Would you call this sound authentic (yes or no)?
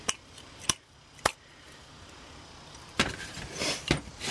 no